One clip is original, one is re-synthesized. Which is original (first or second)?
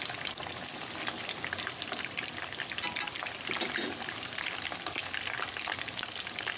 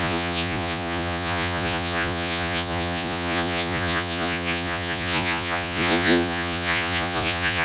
first